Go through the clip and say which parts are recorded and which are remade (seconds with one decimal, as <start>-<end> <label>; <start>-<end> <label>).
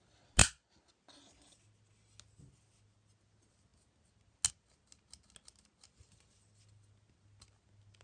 0.0-8.0 recorded